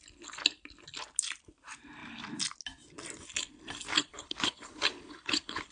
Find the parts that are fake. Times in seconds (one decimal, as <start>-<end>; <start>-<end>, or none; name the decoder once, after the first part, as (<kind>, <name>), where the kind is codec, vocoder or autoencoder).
3.9-5.7 (codec, HILCodec)